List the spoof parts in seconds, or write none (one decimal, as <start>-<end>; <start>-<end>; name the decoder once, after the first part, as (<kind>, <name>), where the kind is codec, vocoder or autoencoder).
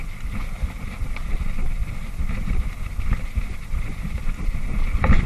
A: none